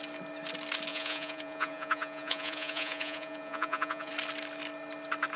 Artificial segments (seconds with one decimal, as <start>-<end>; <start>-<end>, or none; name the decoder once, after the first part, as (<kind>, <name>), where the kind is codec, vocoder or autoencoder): 0.9-4.1 (vocoder, Vocos)